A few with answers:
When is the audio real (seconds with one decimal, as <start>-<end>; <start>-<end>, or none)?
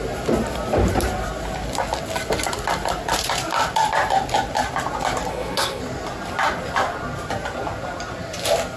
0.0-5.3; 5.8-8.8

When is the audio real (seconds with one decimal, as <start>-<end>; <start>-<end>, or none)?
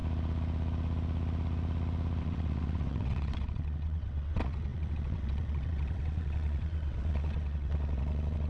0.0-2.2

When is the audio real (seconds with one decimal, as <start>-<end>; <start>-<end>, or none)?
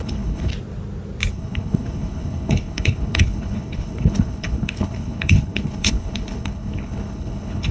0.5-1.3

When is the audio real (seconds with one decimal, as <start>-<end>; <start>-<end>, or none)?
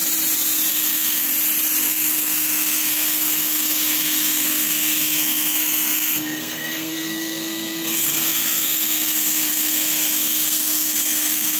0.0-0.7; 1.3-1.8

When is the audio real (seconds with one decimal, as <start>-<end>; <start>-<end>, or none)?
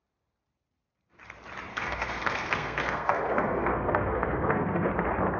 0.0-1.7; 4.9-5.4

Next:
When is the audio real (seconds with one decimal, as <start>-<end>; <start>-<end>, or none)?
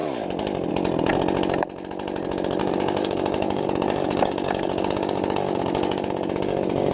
0.0-2.6